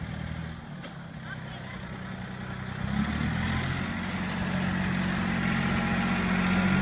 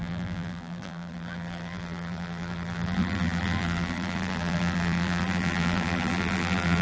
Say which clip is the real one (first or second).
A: first